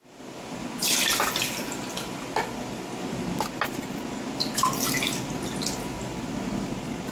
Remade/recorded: recorded